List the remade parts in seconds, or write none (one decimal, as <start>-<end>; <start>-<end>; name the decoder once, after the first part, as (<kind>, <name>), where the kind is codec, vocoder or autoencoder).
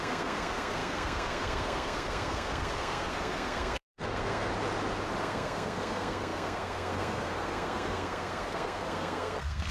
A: 0.0-4.5 (codec, SNAC); 5.2-9.7